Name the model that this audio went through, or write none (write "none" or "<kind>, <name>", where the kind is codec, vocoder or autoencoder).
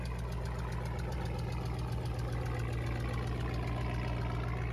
none